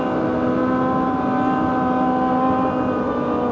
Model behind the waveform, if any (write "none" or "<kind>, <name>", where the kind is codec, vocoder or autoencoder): none